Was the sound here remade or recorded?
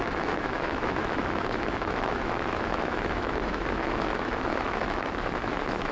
remade